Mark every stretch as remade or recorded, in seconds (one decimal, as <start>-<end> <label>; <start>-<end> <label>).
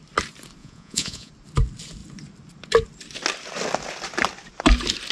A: 0.0-0.6 recorded; 0.6-1.3 remade; 1.3-5.1 recorded